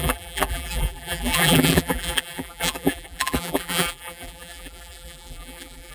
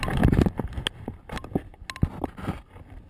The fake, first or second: first